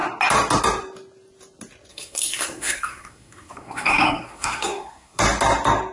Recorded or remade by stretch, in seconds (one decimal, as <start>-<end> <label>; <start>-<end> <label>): 0.0-1.9 recorded; 1.9-5.2 remade; 5.2-5.9 recorded